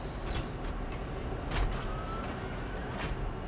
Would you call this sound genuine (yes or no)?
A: yes